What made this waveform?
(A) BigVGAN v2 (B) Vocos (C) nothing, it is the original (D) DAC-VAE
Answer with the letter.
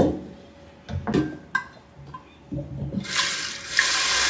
C